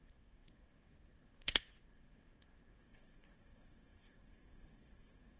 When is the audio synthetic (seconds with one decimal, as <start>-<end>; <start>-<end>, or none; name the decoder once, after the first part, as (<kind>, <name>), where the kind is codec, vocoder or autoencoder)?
0.0-5.4 (codec, SNAC)

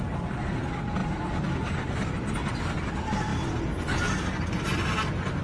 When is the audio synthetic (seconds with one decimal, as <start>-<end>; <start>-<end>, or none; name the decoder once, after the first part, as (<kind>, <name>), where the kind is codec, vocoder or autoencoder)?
none

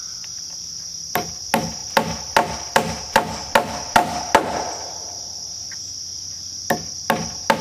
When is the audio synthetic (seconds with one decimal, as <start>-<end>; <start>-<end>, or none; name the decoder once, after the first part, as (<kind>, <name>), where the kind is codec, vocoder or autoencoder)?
none

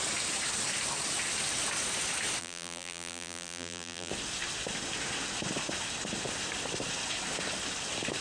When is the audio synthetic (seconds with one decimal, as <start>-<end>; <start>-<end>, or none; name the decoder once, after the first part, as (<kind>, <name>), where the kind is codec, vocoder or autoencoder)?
2.4-4.1 (vocoder, BigVGAN v2)

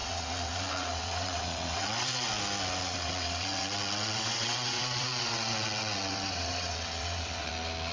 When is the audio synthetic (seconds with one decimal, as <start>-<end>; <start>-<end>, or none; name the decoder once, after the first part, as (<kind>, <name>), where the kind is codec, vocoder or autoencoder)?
0.0-2.3 (vocoder, WaveNeXt); 2.8-7.5

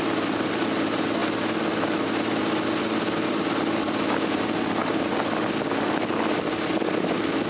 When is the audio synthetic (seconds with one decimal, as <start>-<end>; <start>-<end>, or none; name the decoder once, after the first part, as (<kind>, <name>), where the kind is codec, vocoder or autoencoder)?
0.0-1.2 (vocoder, BigVGAN v2); 2.4-7.5